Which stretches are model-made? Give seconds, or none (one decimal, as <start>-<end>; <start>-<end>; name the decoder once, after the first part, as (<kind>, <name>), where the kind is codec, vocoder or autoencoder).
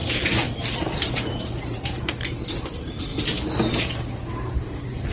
0.0-2.0 (vocoder, BigVGAN v2); 2.7-3.1; 3.8-5.1